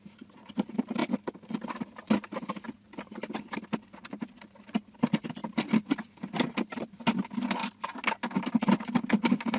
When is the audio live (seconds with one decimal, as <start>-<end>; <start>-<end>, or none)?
0.0-5.4; 5.9-9.6